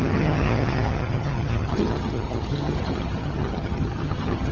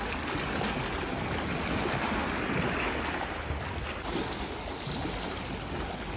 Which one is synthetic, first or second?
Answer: first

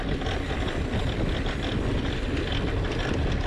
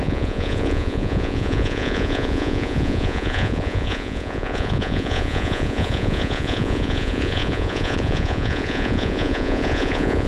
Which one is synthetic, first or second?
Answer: second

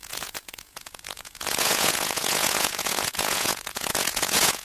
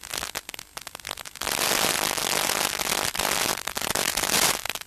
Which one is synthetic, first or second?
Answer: first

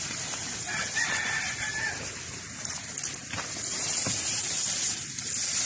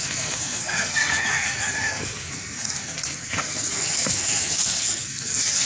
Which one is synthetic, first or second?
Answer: second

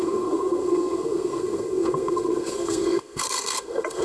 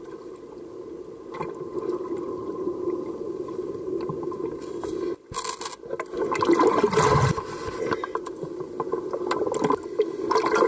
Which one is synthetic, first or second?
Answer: first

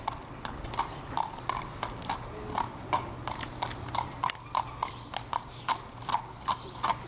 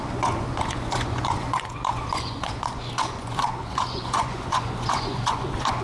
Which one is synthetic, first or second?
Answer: second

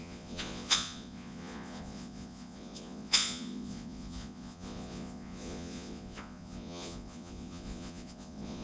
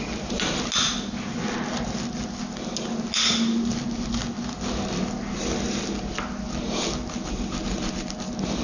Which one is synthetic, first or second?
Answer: first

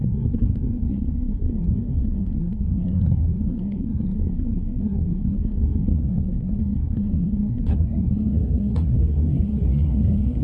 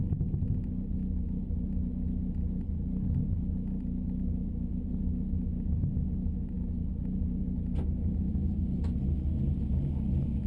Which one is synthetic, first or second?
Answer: first